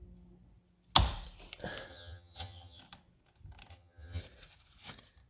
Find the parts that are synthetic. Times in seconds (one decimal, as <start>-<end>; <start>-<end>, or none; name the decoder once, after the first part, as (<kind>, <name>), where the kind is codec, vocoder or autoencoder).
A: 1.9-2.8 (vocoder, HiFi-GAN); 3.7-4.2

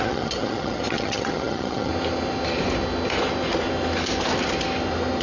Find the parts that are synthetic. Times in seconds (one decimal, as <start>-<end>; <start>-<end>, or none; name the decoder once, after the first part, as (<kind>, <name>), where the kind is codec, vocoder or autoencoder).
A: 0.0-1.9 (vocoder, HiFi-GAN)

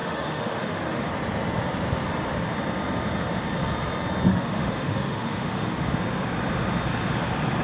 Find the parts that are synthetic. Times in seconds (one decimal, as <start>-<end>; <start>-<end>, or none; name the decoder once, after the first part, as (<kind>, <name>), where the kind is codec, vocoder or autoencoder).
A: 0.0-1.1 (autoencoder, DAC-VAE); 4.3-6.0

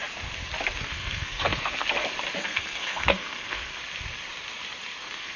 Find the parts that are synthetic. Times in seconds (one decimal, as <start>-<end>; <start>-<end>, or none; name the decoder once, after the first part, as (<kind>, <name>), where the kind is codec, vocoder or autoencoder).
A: 0.8-1.8 (codec, SNAC); 2.4-3.7; 5.0-5.4

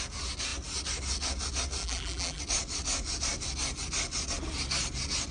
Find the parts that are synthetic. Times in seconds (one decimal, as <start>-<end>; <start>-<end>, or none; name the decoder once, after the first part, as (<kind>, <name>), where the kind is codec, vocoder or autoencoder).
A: 1.8-2.4 (vocoder, BigVGAN v2)

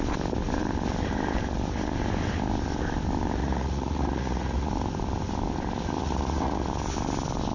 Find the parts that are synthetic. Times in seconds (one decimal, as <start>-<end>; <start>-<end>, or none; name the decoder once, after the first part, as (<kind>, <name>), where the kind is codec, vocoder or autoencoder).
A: 3.4-4.7 (vocoder, Vocos); 6.0-6.7

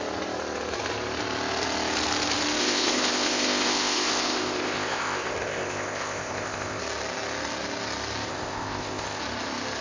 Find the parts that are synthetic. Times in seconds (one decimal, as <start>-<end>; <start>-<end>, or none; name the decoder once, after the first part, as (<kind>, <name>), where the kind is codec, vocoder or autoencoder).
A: 2.6-6.8 (codec, ZipCodec); 8.3-9.2

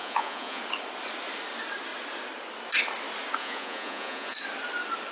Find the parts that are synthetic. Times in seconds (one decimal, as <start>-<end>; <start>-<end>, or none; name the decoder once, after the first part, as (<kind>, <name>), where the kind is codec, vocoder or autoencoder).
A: 0.0-0.6 (vocoder, Vocos); 3.4-4.4